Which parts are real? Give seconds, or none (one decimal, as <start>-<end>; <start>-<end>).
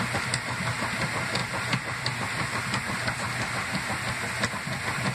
0.0-5.1